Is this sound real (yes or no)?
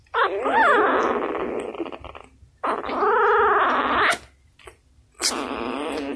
yes